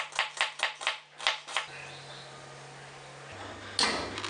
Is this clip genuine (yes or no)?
yes